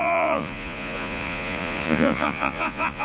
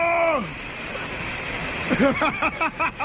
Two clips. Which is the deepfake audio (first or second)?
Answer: first